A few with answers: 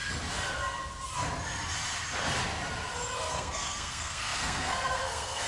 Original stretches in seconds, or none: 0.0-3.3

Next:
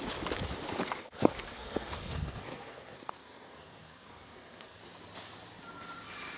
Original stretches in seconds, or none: 0.0-1.0; 4.8-6.4

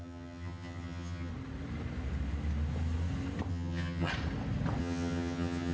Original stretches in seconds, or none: 1.3-3.5; 4.1-4.8